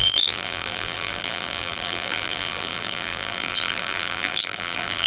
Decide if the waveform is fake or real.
fake